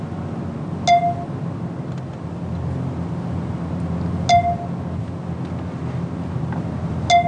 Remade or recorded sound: recorded